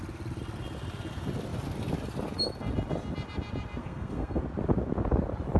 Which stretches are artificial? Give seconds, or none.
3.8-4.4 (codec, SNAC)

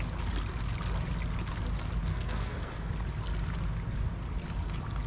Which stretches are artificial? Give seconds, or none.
2.1-2.9 (codec, SNAC)

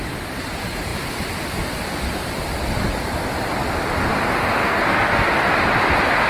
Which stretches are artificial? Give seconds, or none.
4.6-5.3 (codec, SNAC)

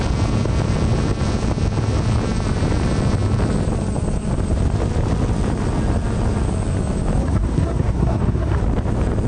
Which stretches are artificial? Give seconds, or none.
7.2-8.6 (codec, SNAC)

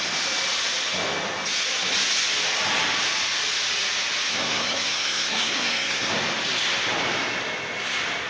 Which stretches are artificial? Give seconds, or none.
4.3-6.1 (codec, SNAC)

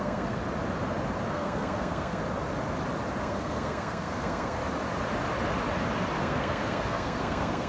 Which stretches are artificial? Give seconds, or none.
0.0-0.4 (codec, SNAC); 1.3-2.2; 3.2-4.6; 6.2-7.7

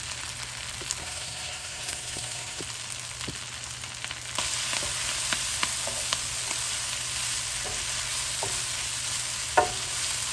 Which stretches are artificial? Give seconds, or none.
1.0-2.6 (codec, SNAC)